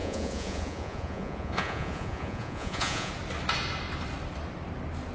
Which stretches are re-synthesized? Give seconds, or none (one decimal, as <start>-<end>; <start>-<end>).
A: 0.0-3.1